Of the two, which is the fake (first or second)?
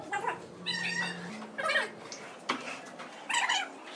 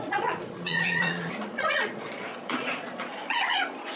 second